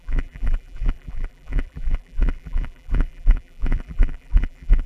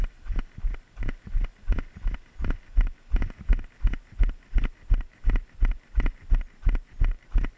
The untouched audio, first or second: second